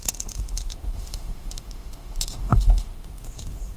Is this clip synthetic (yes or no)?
yes